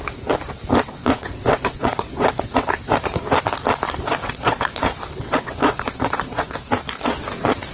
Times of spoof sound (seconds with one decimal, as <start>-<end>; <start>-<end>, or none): 1.0-2.7; 4.2-4.8; 5.2-6.7

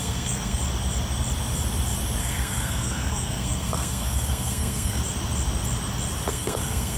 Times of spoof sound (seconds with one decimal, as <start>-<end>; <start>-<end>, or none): 0.0-0.6; 2.2-5.0; 6.3-7.0

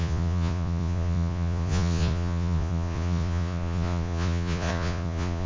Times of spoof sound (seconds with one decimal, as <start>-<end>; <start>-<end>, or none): 0.0-5.5